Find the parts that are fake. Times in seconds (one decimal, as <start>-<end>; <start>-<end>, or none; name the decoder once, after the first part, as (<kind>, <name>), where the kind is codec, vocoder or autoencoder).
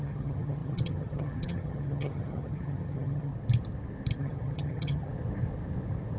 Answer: 0.0-3.3 (vocoder, HiFi-GAN); 4.2-5.1